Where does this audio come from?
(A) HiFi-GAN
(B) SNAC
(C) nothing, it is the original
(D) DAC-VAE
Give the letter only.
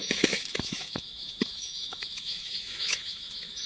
D